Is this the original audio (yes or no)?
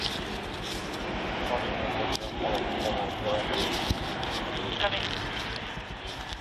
yes